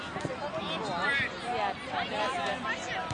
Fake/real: real